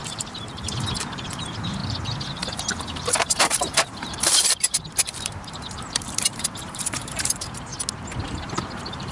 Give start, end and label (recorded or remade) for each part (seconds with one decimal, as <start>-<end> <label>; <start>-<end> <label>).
0.0-7.7 remade; 7.7-8.2 recorded; 8.2-9.1 remade